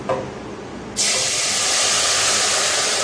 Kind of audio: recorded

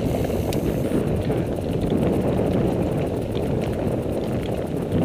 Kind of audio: recorded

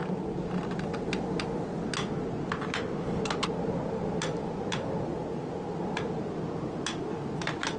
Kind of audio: recorded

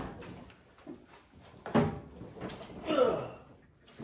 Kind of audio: recorded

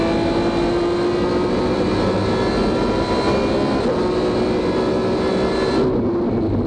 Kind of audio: recorded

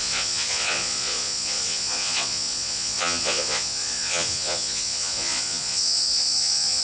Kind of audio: remade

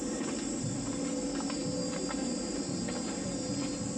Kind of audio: recorded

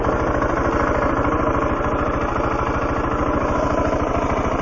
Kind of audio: recorded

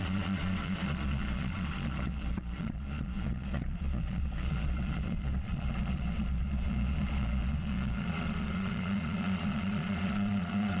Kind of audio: remade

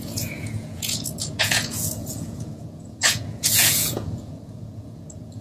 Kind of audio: remade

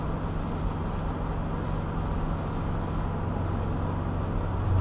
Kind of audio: recorded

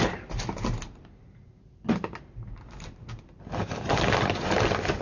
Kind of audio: recorded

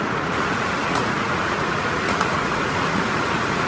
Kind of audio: remade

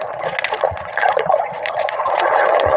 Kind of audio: remade